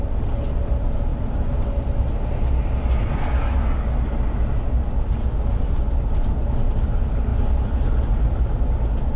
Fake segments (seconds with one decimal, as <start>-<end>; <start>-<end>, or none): none